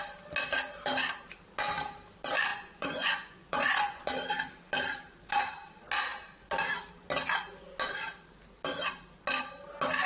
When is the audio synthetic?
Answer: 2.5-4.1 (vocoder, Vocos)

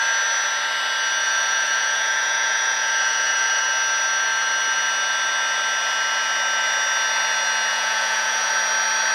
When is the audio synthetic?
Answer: 1.2-3.6 (vocoder, Vocos); 7.7-8.5

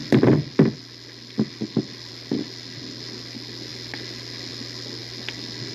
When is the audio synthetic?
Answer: none

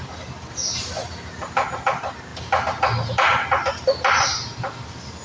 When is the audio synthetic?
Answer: none

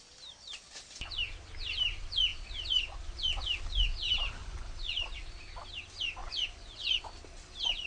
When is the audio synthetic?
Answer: 4.4-4.9 (vocoder, Vocos); 6.2-7.0

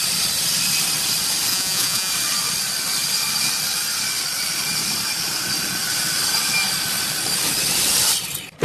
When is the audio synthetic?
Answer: 1.5-2.1 (vocoder, Vocos)